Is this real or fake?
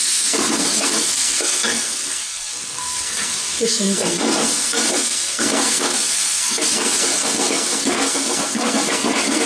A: fake